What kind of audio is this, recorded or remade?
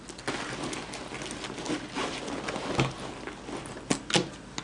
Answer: recorded